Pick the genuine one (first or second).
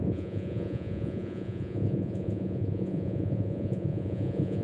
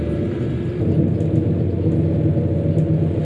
second